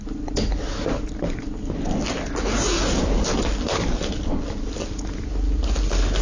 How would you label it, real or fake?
real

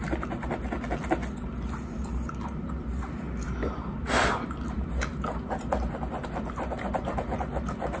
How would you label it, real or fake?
real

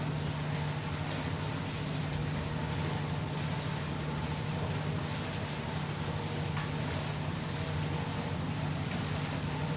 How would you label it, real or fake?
real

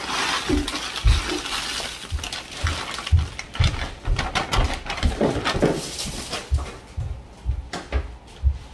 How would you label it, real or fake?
real